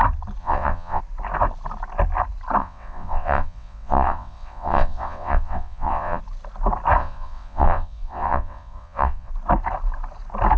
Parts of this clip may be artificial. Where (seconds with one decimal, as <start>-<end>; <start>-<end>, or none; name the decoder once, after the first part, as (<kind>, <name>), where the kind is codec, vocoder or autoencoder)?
0.4-1.0 (vocoder, WaveNeXt); 2.6-6.2; 7.0-9.3